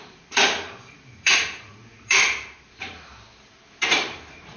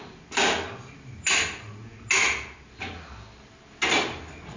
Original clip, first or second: second